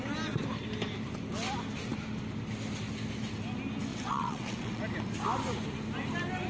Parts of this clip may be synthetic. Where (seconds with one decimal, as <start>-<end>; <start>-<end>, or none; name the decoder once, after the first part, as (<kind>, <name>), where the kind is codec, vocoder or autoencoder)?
3.9-4.8 (vocoder, WaveNeXt)